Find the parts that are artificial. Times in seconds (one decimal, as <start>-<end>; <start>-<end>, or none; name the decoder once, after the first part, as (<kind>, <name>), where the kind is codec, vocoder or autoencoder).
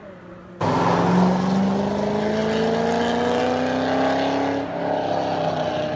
none